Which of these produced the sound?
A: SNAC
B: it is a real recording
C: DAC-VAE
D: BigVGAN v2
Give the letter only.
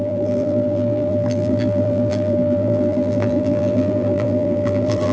D